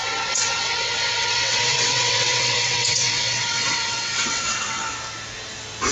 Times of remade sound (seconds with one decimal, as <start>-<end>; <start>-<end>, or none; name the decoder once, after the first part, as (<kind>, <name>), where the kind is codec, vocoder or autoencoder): 0.0-4.8 (vocoder, WaveNeXt)